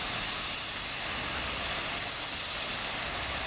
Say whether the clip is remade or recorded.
recorded